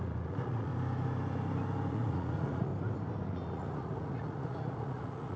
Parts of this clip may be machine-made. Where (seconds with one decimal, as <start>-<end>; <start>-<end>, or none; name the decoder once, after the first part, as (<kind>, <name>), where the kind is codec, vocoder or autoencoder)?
0.0-0.7 (vocoder, Vocos); 1.9-2.7; 3.2-5.4